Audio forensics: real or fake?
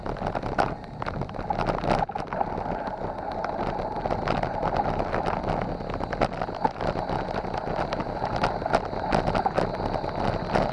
real